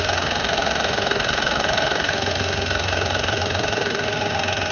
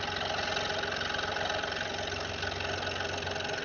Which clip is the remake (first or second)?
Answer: first